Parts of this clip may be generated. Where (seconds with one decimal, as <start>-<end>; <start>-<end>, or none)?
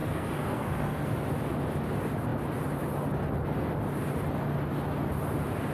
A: 0.0-1.1